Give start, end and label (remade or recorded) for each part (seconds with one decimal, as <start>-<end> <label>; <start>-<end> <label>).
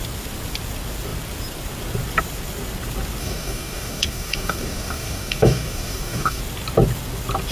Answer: 0.0-3.2 recorded; 3.2-6.4 remade; 6.4-7.5 recorded